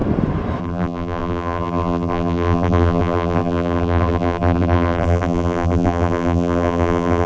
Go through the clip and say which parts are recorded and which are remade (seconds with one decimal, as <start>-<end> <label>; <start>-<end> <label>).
0.0-0.6 recorded; 0.6-7.3 remade